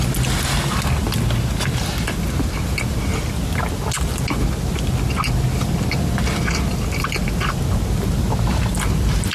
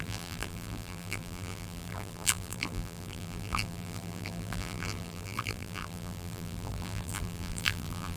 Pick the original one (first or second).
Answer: first